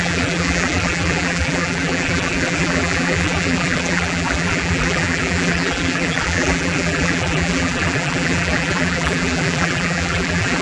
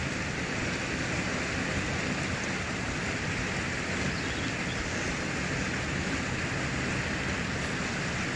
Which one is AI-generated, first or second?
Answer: first